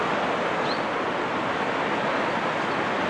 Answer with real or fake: real